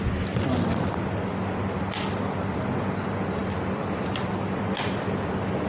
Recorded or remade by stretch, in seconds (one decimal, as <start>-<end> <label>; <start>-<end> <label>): 0.0-5.7 recorded